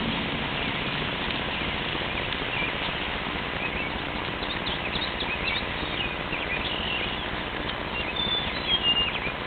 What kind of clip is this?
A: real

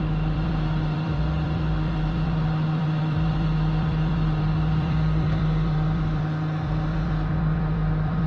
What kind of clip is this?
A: fake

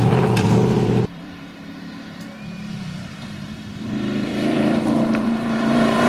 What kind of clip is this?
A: fake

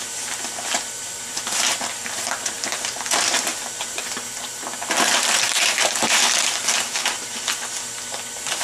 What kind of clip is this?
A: fake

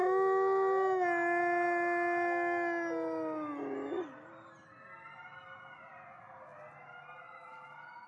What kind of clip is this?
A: real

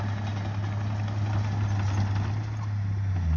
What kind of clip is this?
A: real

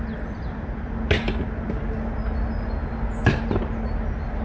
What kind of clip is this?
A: real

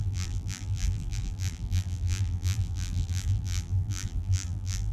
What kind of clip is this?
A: fake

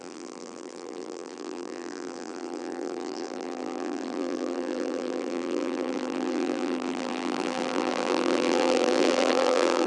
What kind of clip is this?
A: fake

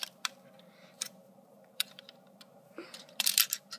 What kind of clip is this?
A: fake